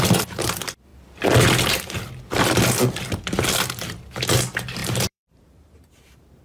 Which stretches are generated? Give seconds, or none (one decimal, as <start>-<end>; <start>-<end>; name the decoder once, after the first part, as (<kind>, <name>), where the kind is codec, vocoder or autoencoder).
4.8-6.4 (vocoder, BigVGAN v2)